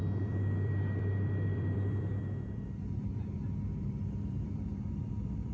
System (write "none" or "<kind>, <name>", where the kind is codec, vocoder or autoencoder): vocoder, BigVGAN v2